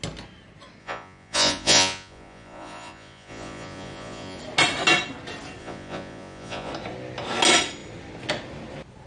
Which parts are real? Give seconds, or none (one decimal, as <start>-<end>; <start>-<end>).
0.0-0.8; 4.4-5.6; 6.7-9.1